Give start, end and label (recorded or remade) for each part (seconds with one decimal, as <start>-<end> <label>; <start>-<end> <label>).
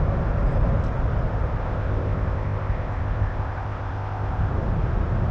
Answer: 0.0-1.6 recorded; 1.6-4.5 remade; 4.5-5.3 recorded